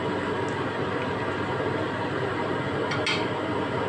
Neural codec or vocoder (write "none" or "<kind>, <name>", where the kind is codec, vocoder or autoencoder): none